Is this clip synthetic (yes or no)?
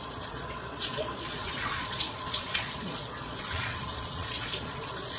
yes